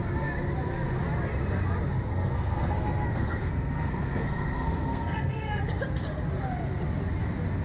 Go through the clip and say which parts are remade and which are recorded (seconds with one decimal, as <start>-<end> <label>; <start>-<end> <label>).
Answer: 0.0-2.1 recorded; 2.1-5.6 remade; 5.6-7.6 recorded